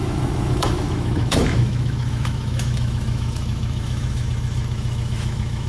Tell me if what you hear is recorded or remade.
remade